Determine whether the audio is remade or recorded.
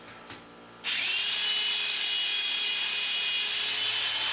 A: recorded